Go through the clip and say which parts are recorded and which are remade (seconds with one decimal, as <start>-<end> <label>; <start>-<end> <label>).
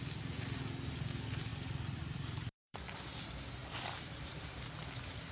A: 0.0-1.5 recorded; 1.5-3.2 remade; 3.2-3.6 recorded; 3.6-5.3 remade